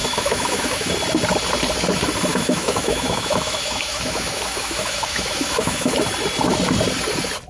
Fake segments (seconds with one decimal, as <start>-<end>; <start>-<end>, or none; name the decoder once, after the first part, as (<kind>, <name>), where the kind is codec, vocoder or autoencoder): 0.0-0.9 (autoencoder, DAC-VAE); 2.3-5.9